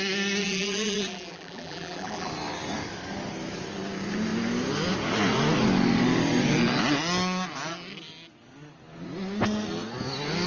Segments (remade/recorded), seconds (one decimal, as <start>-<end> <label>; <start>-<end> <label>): 0.0-0.4 recorded; 0.4-2.3 remade; 2.3-10.5 recorded